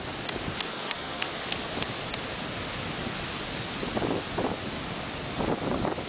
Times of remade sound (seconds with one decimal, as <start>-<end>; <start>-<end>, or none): 0.7-1.3